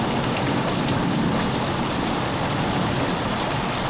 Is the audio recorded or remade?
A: remade